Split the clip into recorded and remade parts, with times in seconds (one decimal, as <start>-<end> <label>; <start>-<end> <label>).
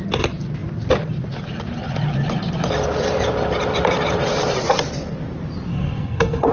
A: 0.0-5.7 recorded; 5.7-6.5 remade